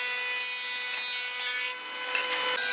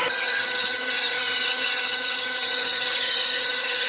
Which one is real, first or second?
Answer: first